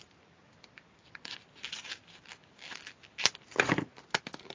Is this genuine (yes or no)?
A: yes